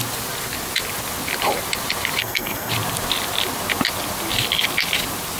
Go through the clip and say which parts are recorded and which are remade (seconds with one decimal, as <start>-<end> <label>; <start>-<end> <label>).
0.0-2.2 recorded; 2.2-2.7 remade; 2.7-5.4 recorded

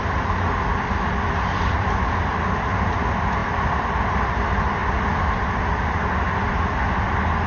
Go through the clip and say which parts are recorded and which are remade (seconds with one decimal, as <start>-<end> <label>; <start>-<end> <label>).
0.0-7.5 recorded

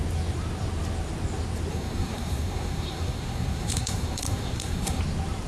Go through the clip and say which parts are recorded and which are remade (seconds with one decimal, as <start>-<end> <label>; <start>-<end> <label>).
0.0-1.7 recorded; 1.7-5.0 remade; 5.0-5.5 recorded

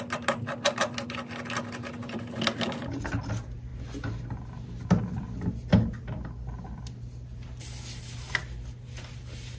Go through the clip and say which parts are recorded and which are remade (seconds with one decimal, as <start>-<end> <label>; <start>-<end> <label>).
0.0-9.6 recorded

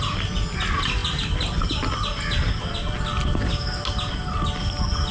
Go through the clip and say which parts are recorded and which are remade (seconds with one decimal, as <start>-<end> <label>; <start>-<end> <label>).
0.0-5.1 recorded

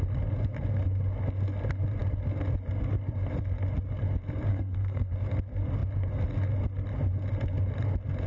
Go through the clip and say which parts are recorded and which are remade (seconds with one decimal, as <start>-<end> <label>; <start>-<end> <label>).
0.0-4.5 recorded; 4.5-5.1 remade; 5.1-8.3 recorded

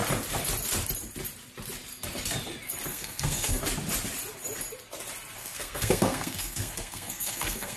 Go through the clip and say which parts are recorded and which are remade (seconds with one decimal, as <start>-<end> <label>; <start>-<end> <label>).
0.0-2.9 recorded; 2.9-3.6 remade; 3.6-5.4 recorded; 5.4-7.8 remade